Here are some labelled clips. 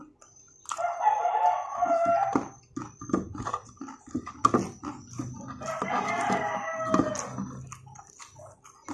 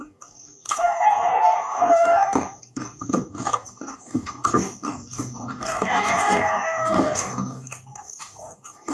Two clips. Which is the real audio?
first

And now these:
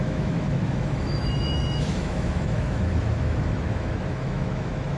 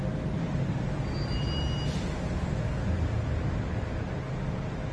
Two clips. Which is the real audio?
second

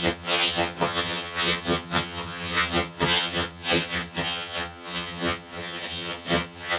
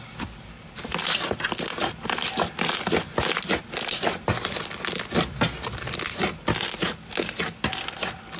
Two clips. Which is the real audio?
second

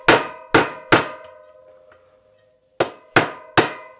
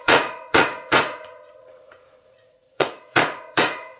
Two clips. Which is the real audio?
first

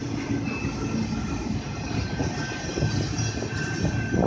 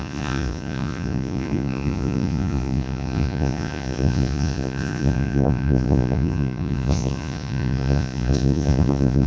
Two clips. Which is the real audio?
first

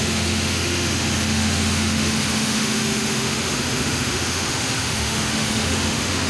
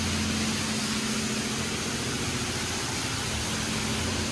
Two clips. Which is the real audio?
second